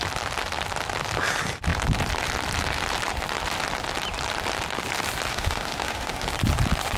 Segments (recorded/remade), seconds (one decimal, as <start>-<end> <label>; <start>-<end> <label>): 0.0-5.3 recorded; 5.3-6.3 remade; 6.3-7.0 recorded